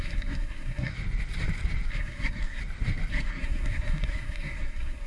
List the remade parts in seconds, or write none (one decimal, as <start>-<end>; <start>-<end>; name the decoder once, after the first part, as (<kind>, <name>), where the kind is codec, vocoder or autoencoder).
0.0-0.9 (codec, SNAC); 1.9-2.6; 3.1-5.1